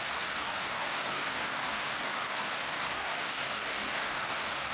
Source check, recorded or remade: remade